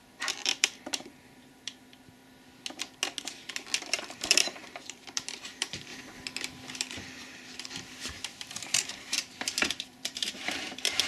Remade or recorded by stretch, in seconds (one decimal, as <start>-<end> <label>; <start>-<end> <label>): 0.0-2.2 remade; 2.2-3.8 recorded; 3.8-5.9 remade; 5.9-6.8 recorded; 6.8-11.1 remade